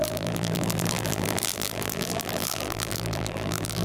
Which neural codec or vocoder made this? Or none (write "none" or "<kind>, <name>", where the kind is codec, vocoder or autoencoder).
vocoder, BigVGAN v2